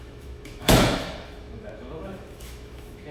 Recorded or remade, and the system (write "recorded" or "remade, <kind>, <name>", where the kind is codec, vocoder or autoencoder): remade, autoencoder, DAC-VAE